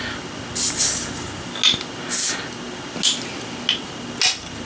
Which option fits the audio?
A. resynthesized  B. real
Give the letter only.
B